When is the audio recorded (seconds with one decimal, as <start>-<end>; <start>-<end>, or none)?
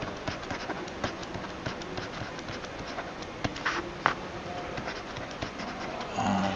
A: 1.2-2.7; 3.5-4.9